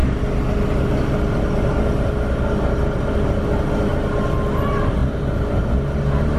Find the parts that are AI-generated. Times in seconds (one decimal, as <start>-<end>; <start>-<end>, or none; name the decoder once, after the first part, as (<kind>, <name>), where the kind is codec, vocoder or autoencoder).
none